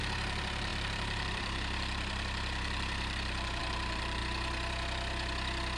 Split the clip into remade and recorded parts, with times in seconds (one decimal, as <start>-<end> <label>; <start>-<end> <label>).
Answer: 0.0-4.2 remade; 4.2-5.8 recorded